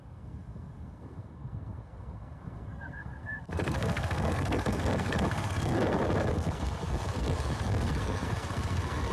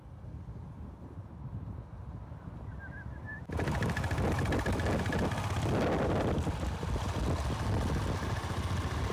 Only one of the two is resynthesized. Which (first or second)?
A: first